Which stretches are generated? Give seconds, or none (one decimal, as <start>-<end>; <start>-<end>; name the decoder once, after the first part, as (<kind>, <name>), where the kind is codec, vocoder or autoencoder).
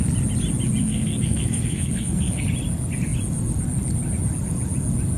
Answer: 0.8-2.4 (codec, SNAC)